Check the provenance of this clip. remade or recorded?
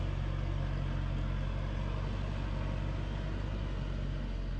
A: recorded